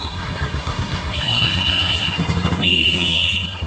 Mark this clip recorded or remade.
remade